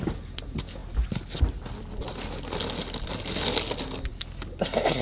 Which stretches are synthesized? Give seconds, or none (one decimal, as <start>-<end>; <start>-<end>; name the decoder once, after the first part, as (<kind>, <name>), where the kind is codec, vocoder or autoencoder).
none